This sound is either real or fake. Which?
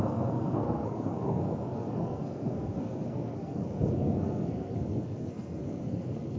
fake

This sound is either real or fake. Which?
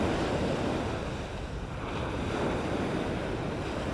real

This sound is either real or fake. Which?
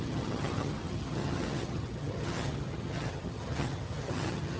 fake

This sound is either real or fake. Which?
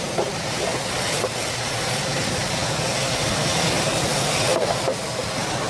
real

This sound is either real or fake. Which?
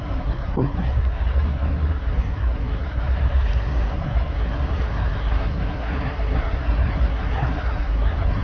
fake